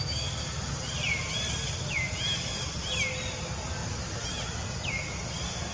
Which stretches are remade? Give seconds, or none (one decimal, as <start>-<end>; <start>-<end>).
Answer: none